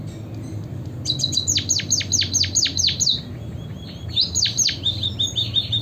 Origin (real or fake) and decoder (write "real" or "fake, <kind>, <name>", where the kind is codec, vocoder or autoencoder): real